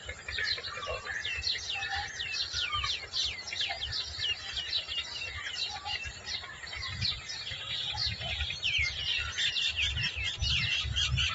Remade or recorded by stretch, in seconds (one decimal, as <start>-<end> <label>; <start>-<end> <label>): 0.0-11.3 recorded